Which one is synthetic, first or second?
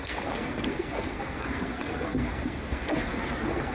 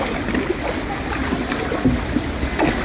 first